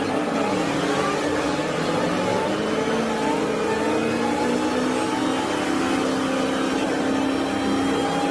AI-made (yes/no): no